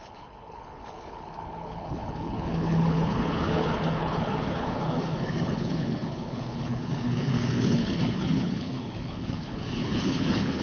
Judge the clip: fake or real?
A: fake